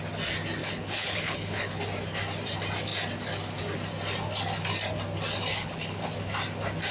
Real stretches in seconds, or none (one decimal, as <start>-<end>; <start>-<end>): 0.0-0.6; 1.8-5.5; 6.0-6.9